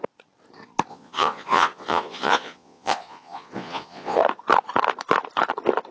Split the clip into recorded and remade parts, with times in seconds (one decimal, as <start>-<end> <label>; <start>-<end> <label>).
0.0-0.9 recorded; 0.9-4.2 remade; 4.2-5.9 recorded

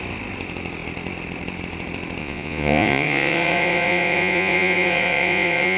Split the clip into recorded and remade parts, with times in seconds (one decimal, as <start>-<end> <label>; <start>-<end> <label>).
0.0-2.2 recorded; 2.2-5.8 remade